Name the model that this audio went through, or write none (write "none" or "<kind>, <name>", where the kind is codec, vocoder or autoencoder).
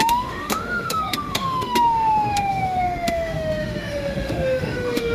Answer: autoencoder, DAC-VAE